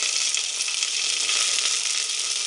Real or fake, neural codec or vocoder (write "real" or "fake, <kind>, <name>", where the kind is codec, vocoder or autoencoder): real